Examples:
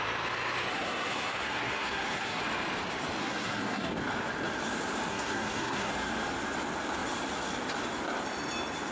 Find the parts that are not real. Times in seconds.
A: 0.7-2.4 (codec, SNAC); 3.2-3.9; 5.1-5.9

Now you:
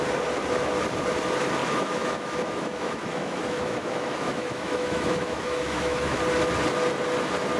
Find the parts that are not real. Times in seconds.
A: 1.6-6.2 (autoencoder, DAC-VAE)

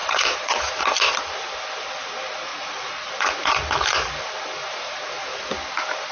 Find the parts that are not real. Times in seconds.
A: 0.0-0.8 (vocoder, Vocos); 2.5-3.1; 4.6-5.5

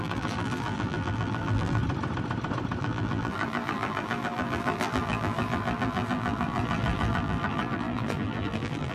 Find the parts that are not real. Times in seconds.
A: 0.0-1.8 (vocoder, BigVGAN v2); 2.8-8.9

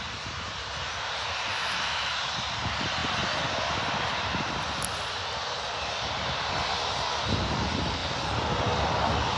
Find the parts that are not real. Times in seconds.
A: 1.5-2.2 (autoencoder, DAC-VAE)

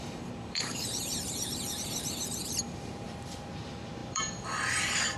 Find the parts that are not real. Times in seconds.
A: 0.0-5.2 (vocoder, BigVGAN v2)

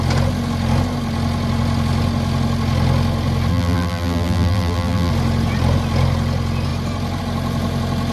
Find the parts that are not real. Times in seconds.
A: 3.5-5.1 (vocoder, BigVGAN v2)